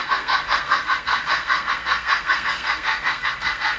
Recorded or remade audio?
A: remade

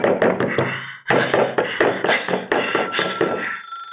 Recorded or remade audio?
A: recorded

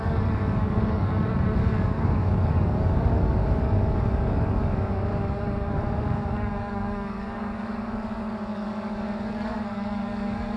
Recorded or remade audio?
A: remade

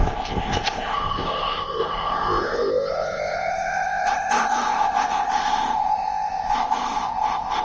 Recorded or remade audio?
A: remade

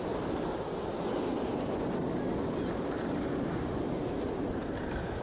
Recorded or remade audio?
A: recorded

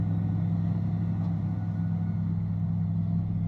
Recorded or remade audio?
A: recorded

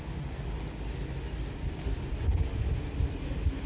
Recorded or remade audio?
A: recorded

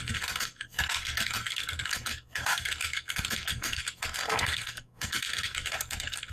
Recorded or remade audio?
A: remade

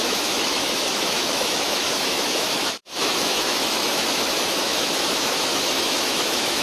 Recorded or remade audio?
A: remade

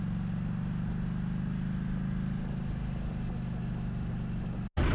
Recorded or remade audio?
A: recorded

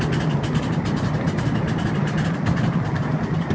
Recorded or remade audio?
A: recorded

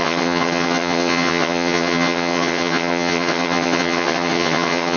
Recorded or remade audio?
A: remade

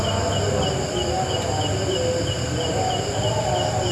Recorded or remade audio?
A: recorded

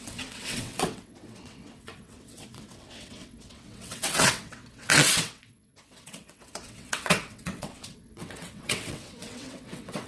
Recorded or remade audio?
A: remade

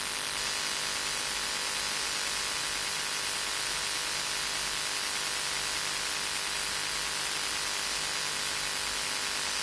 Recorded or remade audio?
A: recorded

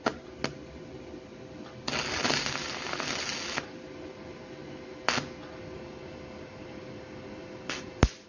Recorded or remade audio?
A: recorded